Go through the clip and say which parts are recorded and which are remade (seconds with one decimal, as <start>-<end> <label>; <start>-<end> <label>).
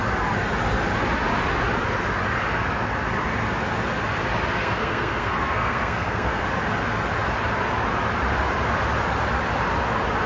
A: 0.0-4.6 recorded; 4.6-6.4 remade; 6.4-10.3 recorded